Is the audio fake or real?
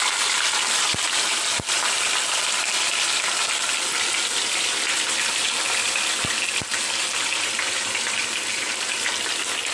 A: real